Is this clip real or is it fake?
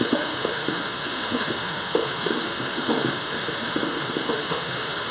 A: fake